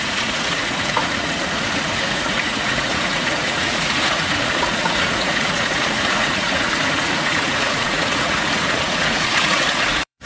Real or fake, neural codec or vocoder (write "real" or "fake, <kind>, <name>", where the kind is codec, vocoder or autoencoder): fake, vocoder, Vocos